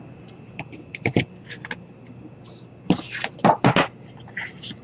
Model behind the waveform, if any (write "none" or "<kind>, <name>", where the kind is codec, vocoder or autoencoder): none